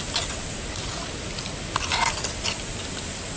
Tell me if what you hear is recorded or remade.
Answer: recorded